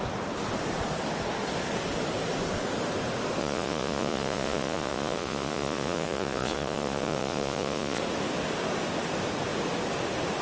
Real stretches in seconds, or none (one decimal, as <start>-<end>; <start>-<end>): 0.0-3.4; 8.0-10.4

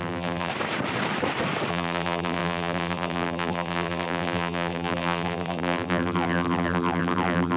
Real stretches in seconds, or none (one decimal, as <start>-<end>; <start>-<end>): 0.5-1.7

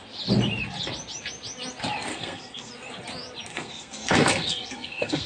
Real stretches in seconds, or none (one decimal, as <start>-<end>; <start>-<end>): 0.0-2.1; 2.7-3.5

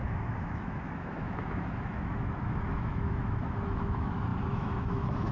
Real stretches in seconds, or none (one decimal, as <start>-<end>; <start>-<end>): none